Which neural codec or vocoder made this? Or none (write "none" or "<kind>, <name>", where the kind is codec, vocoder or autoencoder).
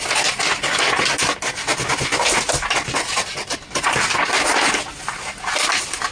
none